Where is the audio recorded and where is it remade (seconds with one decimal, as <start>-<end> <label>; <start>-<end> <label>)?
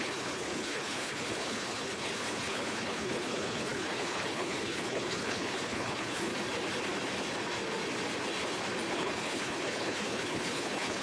0.0-6.3 remade; 6.3-8.9 recorded; 8.9-11.0 remade